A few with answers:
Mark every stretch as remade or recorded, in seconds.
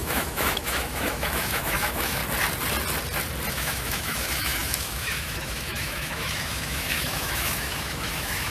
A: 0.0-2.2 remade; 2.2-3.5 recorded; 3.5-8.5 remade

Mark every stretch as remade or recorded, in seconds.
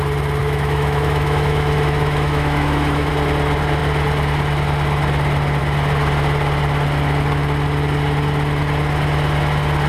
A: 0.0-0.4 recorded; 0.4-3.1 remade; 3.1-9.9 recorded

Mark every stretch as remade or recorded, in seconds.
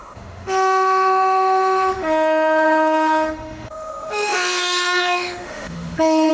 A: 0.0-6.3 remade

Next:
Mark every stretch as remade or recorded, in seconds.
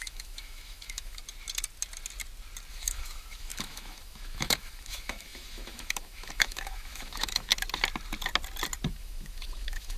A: 0.0-1.2 remade; 1.2-2.7 recorded; 2.7-7.5 remade; 7.5-8.9 recorded; 8.9-10.0 remade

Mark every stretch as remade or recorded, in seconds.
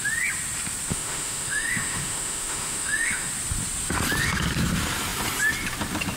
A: 0.0-0.9 recorded; 0.9-3.3 remade; 3.3-6.2 recorded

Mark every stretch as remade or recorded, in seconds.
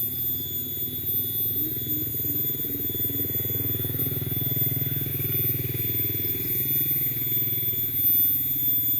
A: 0.0-9.0 recorded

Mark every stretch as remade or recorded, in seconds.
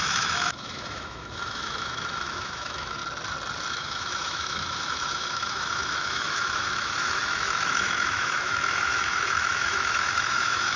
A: 0.0-3.0 remade; 3.0-3.7 recorded; 3.7-10.8 remade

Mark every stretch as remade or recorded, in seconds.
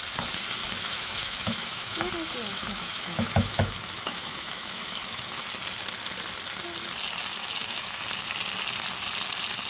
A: 0.0-0.6 recorded; 0.6-2.1 remade; 2.1-2.5 recorded; 2.5-5.4 remade; 5.4-7.3 recorded; 7.3-8.0 remade; 8.0-9.7 recorded